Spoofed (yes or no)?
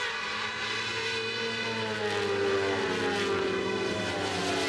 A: no